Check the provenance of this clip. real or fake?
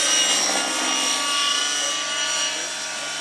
real